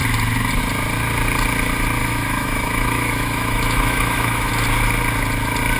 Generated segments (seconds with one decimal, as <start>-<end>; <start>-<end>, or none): 2.0-4.5